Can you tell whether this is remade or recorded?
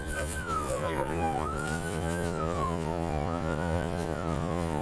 remade